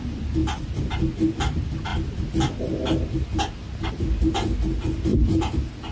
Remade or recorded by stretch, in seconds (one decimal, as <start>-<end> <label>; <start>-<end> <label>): 0.0-5.9 recorded